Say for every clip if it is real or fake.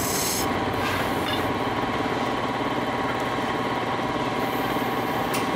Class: real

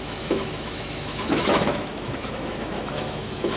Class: fake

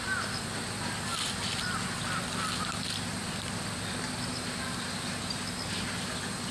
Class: real